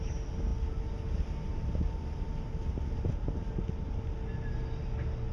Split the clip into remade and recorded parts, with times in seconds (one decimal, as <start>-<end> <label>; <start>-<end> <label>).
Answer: 0.0-5.3 recorded